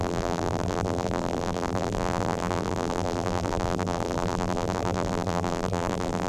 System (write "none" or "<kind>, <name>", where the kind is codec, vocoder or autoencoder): vocoder, BigVGAN v2